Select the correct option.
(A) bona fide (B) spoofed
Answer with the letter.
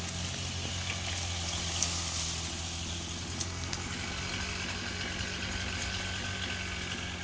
A